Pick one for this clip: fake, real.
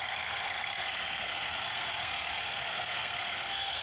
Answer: fake